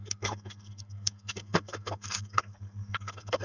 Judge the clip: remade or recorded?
remade